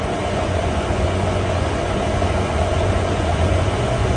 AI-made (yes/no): yes